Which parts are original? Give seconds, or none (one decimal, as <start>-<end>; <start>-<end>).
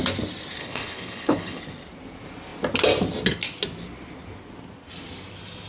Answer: 0.0-0.6; 1.6-5.7